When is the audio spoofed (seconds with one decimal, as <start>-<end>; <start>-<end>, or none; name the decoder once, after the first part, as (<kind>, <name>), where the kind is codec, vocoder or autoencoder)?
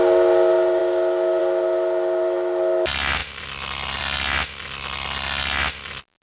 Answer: none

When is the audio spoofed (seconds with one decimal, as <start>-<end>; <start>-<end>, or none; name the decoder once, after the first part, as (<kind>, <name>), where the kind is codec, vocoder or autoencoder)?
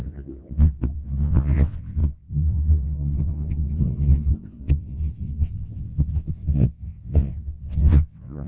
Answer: 0.0-8.5 (vocoder, WaveNeXt)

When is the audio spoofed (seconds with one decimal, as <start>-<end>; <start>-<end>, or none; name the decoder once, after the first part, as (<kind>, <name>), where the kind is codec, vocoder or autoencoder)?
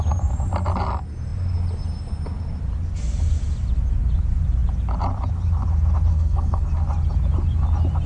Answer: 6.1-6.7 (codec, SNAC)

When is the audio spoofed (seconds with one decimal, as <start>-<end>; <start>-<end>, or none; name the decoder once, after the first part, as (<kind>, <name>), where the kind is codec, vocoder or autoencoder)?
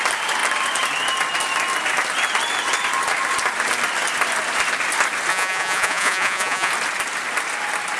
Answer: 5.3-6.7 (vocoder, Vocos)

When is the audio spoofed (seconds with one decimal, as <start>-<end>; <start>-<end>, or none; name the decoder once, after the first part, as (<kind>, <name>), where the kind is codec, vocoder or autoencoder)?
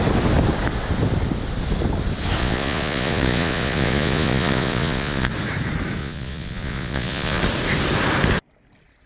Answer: 2.4-5.3 (vocoder, Vocos); 6.0-7.4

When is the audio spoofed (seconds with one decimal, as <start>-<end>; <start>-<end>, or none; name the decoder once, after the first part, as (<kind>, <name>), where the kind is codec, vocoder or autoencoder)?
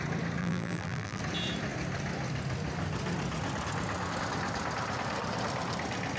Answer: 0.4-1.2 (vocoder, BigVGAN v2)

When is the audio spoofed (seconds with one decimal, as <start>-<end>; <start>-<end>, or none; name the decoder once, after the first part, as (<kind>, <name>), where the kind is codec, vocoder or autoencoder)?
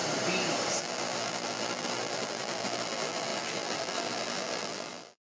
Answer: 0.8-5.3 (vocoder, BigVGAN v2)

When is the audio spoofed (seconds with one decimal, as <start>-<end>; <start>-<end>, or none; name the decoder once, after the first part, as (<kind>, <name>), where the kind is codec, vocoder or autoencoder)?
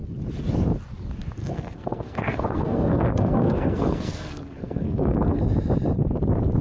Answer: 1.4-5.4 (codec, SNAC)